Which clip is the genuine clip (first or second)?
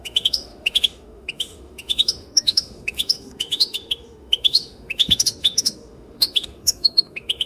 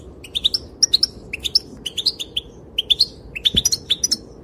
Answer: second